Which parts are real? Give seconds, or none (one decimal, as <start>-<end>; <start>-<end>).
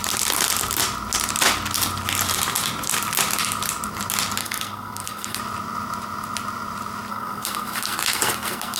0.0-4.4; 5.4-7.1